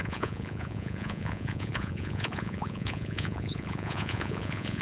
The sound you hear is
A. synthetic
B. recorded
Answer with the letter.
A